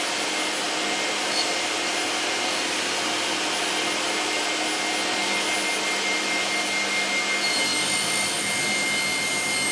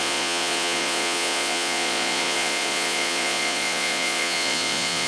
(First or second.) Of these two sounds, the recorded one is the first